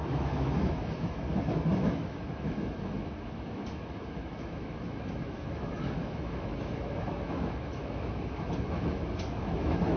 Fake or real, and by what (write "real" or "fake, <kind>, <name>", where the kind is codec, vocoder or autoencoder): fake, autoencoder, DAC-VAE